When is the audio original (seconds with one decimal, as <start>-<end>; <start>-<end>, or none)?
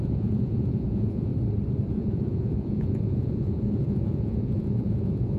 1.3-1.9